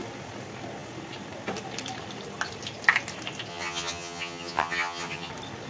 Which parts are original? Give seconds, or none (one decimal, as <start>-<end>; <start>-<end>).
0.0-3.5; 5.3-5.7

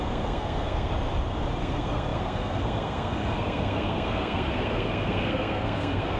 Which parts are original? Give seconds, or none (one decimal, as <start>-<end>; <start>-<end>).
0.9-1.6